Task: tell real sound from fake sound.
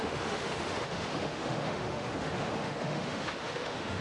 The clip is fake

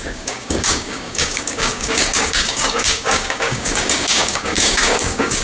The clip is fake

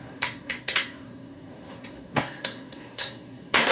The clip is fake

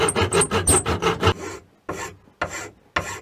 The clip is real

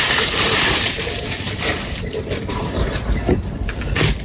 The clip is fake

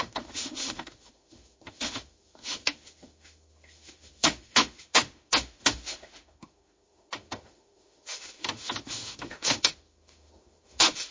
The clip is fake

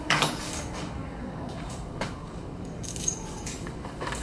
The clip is fake